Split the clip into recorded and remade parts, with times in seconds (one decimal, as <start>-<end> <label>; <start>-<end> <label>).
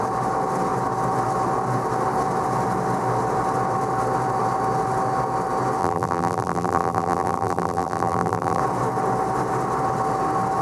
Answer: 0.0-5.8 recorded; 5.8-8.6 remade; 8.6-10.6 recorded